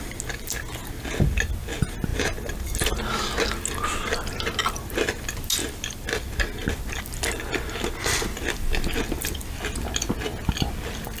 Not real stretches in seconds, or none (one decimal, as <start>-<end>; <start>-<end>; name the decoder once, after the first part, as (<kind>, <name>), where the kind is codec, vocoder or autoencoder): none